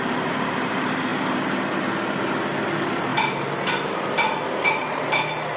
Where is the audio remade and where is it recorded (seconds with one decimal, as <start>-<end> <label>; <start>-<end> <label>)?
0.0-5.6 recorded